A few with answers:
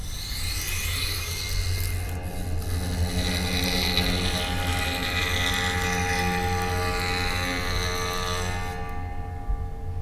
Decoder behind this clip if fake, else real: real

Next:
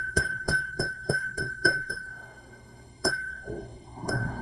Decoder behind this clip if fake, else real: fake, codec, SNAC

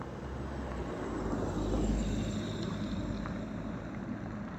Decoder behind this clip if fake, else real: real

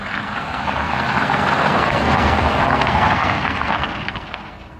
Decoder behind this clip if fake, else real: fake, codec, SNAC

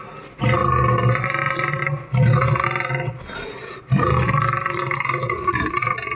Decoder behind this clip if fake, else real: real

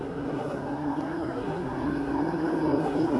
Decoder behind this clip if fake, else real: fake, codec, SNAC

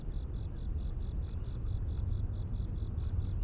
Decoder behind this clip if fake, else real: real